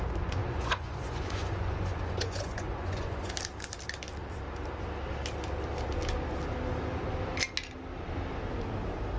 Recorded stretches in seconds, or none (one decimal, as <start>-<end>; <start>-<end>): 0.0-0.4; 3.3-9.2